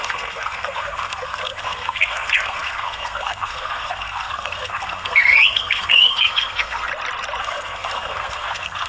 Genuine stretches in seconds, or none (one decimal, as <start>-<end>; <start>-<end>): 6.9-7.4